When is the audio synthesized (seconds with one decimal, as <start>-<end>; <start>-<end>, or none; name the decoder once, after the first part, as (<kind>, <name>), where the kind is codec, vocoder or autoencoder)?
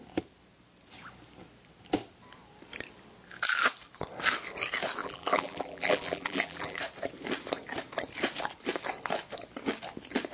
5.0-6.8 (vocoder, BigVGAN v2)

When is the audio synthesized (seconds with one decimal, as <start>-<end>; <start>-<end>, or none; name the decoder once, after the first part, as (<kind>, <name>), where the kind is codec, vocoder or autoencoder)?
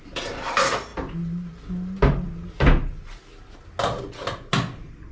none